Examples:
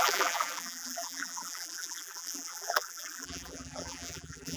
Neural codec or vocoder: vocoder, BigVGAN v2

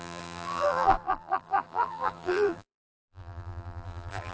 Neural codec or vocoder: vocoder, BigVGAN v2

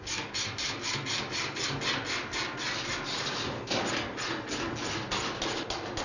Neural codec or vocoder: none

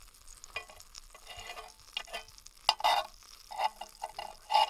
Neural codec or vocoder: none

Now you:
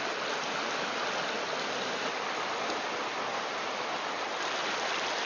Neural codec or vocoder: none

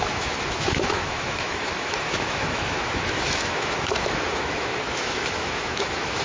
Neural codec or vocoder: autoencoder, DAC-VAE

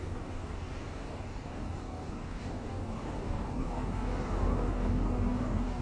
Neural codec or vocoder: codec, DAC